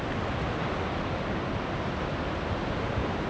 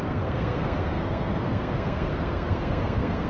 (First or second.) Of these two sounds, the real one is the first